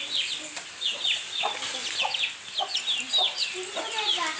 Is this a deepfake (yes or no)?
no